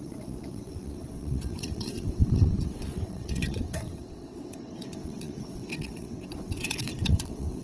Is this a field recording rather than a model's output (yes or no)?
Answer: no